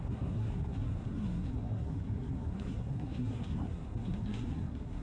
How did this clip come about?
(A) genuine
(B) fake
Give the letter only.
B